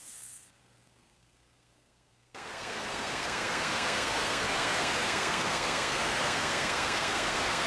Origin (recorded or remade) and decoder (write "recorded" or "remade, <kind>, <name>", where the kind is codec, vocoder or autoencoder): remade, codec, SNAC